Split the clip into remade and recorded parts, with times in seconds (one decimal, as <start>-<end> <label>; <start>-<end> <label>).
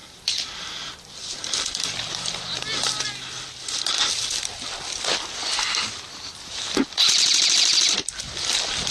0.0-8.9 recorded